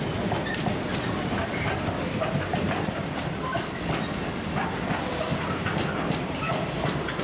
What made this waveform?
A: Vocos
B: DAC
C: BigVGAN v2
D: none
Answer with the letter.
D